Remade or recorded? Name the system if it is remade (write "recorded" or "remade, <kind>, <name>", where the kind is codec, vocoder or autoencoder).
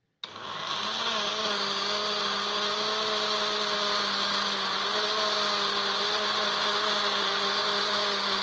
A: recorded